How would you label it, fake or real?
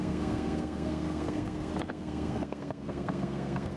fake